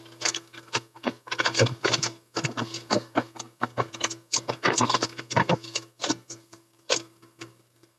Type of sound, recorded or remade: remade